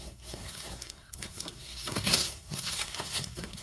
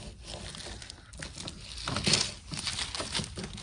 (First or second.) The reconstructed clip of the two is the first